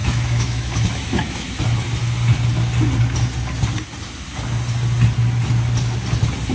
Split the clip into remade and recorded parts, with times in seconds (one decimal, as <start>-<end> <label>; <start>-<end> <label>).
0.0-1.6 remade; 1.6-6.5 recorded